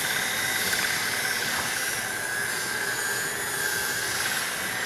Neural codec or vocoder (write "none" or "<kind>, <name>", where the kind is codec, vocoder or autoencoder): none